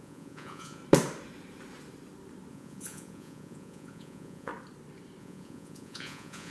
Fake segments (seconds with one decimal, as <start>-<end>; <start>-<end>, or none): 0.0-0.8; 2.5-4.5; 5.2-6.5